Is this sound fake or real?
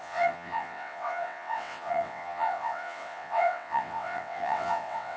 fake